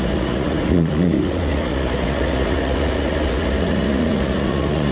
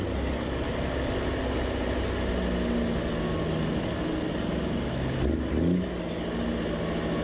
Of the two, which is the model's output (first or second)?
first